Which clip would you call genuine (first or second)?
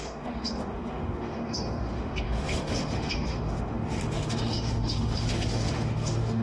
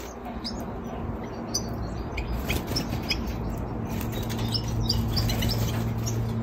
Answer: second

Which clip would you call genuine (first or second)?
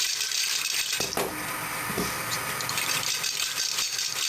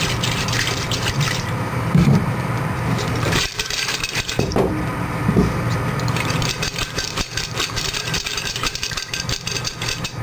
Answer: first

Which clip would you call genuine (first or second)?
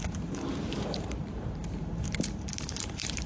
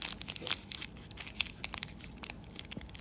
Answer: second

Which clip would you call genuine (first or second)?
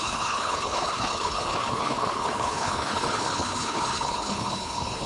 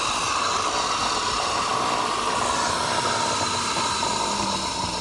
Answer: second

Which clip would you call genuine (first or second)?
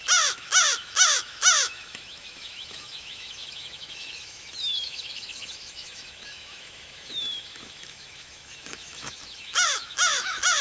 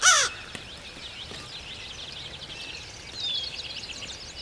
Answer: second